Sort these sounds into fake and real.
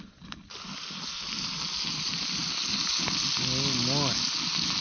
real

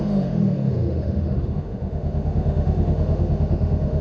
fake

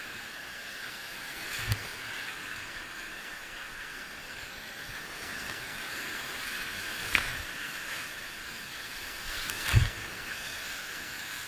fake